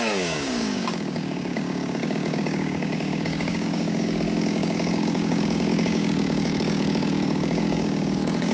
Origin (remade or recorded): remade